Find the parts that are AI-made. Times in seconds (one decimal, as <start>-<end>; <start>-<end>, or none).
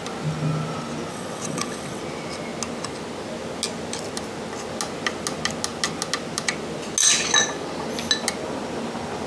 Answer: 1.1-2.0